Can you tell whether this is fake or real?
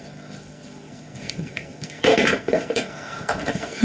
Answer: fake